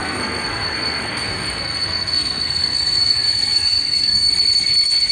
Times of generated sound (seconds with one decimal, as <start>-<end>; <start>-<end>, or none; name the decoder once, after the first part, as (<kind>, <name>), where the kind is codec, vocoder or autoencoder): 0.0-4.3 (codec, SNAC)